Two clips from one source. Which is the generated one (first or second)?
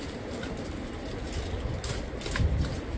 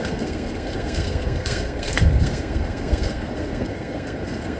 second